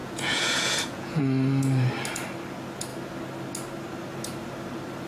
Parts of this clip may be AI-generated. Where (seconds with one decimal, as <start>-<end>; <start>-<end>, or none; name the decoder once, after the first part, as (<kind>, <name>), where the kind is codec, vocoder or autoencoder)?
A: 0.0-1.2 (vocoder, Vocos)